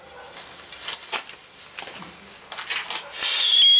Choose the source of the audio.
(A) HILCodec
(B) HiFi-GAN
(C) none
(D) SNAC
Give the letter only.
C